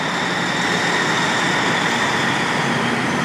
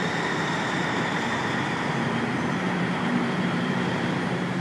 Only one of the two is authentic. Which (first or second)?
first